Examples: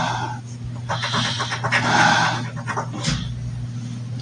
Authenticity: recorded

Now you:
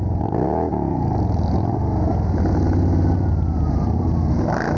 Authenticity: recorded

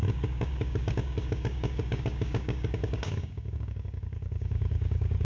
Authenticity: remade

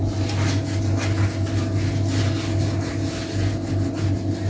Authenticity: recorded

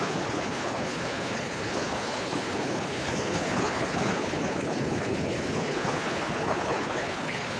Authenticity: remade